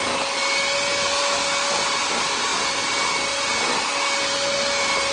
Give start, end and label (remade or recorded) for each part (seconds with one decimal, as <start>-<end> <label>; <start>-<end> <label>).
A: 0.0-5.1 recorded